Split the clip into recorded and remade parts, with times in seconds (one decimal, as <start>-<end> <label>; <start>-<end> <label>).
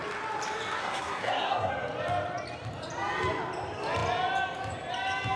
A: 0.0-0.8 recorded; 0.8-1.7 remade; 1.7-5.4 recorded